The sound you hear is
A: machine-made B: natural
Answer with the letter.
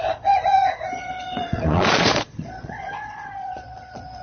A